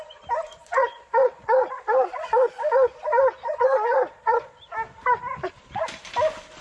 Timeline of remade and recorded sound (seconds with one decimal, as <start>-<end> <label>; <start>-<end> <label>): 0.0-0.6 recorded; 0.6-4.6 remade; 4.6-6.6 recorded